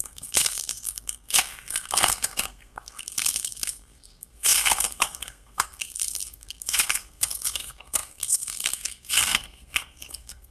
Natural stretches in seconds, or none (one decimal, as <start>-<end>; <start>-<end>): none